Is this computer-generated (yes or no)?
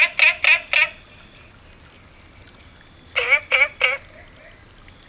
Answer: no